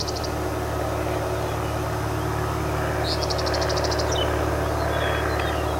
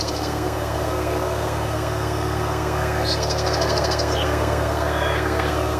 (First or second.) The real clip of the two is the first